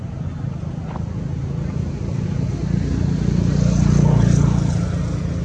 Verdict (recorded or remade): recorded